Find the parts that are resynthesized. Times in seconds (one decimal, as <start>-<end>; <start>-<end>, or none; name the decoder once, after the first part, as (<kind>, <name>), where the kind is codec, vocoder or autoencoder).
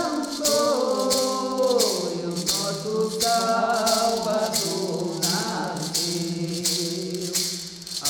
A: 0.0-2.9 (vocoder, Vocos); 3.6-8.1